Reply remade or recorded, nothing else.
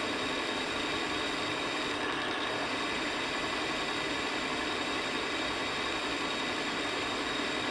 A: recorded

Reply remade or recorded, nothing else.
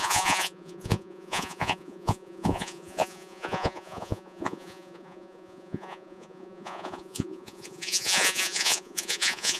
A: remade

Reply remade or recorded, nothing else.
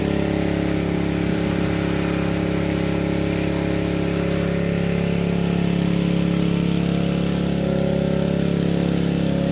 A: recorded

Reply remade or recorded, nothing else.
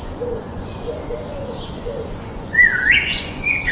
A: remade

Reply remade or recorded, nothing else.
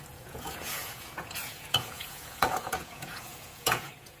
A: remade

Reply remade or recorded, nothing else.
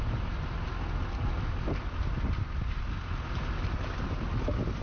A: recorded